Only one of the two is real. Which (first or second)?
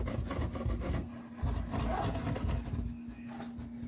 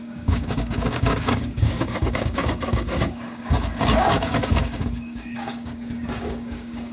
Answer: first